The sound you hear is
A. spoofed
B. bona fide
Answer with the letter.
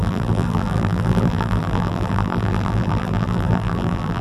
A